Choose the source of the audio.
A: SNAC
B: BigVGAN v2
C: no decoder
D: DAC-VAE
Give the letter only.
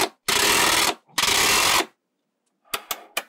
C